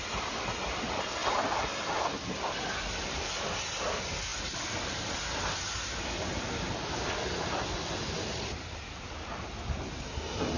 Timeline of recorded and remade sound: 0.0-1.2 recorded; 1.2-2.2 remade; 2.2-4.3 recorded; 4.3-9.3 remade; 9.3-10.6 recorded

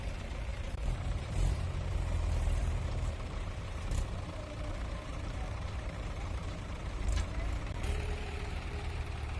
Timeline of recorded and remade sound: 0.0-0.5 recorded; 0.5-3.8 remade; 3.8-5.1 recorded; 5.1-9.0 remade; 9.0-9.4 recorded

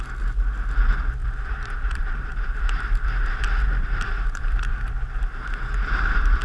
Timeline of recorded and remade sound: 0.0-1.2 recorded; 1.2-4.9 remade; 4.9-6.4 recorded

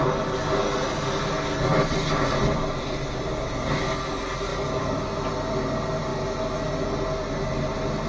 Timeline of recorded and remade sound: 0.0-1.7 recorded; 1.7-3.8 remade; 3.8-8.1 recorded

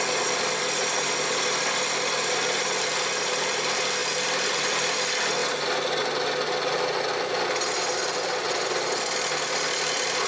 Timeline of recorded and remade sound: 0.0-10.3 recorded

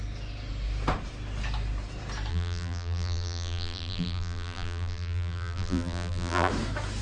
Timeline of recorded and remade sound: 0.0-2.3 recorded; 2.3-6.5 remade; 6.5-7.0 recorded

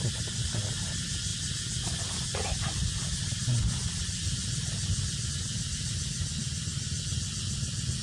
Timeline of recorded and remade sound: 0.0-8.0 recorded

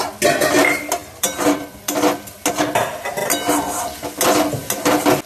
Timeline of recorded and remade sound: 0.0-1.0 recorded; 1.0-1.9 remade; 1.9-3.2 recorded; 3.2-3.8 remade; 3.8-5.3 recorded